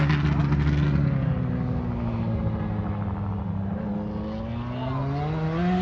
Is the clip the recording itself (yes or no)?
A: yes